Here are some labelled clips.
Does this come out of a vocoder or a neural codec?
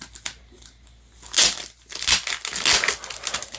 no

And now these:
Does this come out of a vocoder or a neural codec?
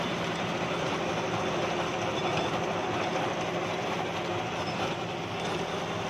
no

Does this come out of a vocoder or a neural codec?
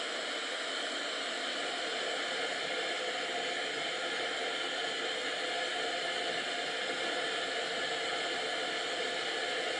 no